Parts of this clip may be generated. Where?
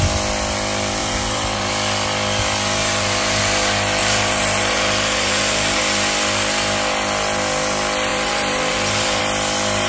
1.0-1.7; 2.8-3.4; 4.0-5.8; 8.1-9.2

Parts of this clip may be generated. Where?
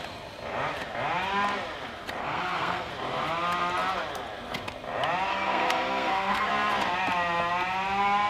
2.2-2.9; 5.3-6.5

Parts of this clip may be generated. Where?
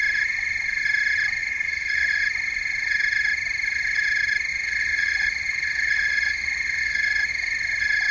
1.4-2.2; 4.5-7.3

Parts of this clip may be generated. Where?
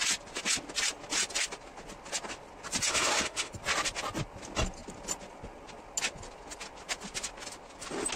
2.9-3.5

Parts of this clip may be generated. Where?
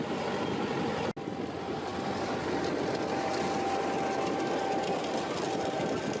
none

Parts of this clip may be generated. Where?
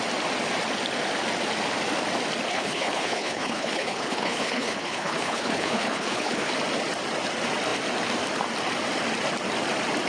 2.5-6.5